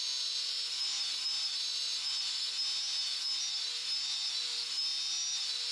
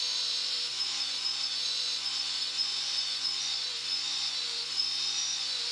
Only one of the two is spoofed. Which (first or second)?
second